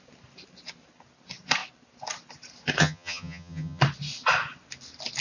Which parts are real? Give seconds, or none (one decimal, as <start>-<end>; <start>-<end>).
0.0-2.8; 3.8-5.2